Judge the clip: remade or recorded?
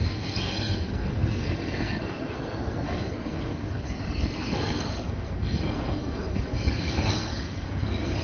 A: remade